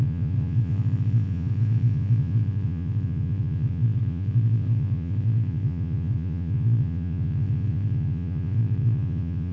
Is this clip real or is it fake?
fake